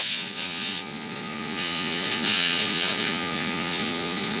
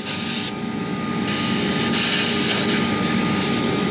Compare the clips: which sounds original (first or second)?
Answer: second